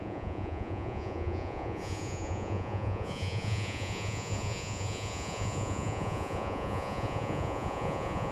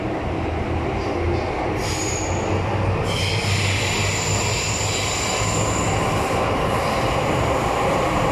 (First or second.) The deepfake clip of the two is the first